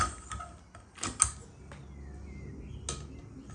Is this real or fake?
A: real